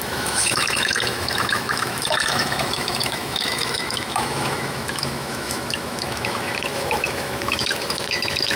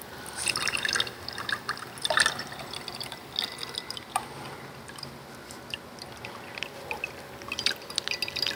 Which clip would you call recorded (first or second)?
second